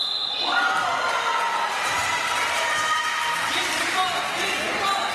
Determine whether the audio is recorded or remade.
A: recorded